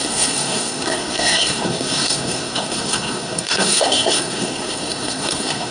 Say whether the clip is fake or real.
fake